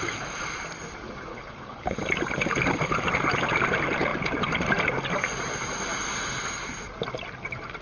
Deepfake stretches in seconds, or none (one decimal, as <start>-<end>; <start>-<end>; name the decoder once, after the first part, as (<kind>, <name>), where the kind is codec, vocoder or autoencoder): 1.3-2.0 (codec, HILCodec)